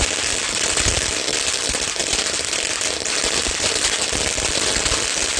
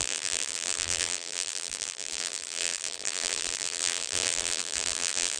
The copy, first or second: second